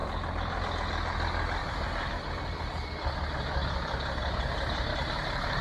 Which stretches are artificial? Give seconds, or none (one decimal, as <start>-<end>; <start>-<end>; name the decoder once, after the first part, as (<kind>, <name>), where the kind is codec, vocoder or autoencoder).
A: 1.6-2.1 (vocoder, BigVGAN v2); 4.9-5.6